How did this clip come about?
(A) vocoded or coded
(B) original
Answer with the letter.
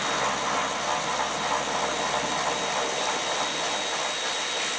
B